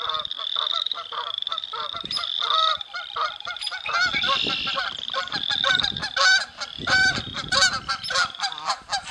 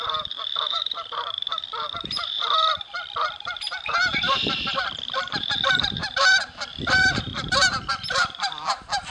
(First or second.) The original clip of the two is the first